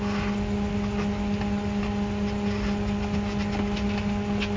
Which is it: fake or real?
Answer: real